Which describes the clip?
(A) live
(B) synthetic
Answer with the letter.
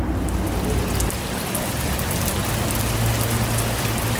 A